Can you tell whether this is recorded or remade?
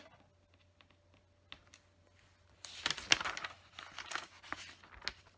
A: recorded